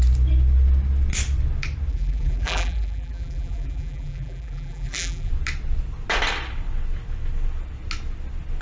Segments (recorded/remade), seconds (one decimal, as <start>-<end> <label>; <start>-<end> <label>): 0.0-1.9 recorded; 1.9-5.3 remade; 5.3-8.6 recorded